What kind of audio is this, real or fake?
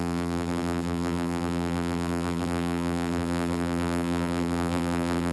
fake